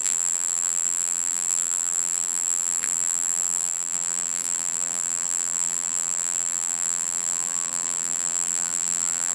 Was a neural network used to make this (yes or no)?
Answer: yes